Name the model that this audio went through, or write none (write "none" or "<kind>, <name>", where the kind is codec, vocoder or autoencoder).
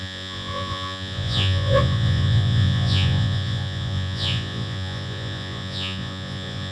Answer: vocoder, Vocos